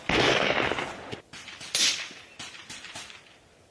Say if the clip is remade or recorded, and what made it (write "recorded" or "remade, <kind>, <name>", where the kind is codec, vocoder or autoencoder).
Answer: recorded